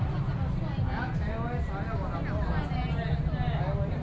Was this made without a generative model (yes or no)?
yes